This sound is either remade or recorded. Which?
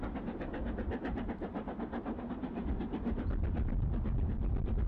recorded